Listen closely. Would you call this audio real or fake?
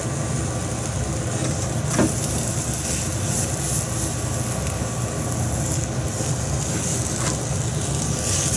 real